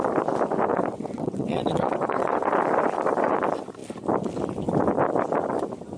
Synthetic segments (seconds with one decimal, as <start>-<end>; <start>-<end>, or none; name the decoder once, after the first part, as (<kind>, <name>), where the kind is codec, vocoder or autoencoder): 0.7-2.5 (vocoder, WaveNeXt)